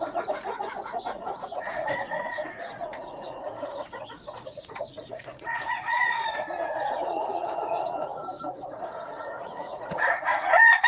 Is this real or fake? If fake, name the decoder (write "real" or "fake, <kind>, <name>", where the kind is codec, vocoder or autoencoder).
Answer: fake, vocoder, Vocos